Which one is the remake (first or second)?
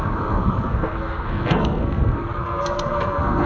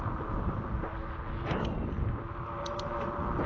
first